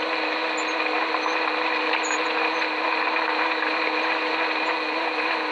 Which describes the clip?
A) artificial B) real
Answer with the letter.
B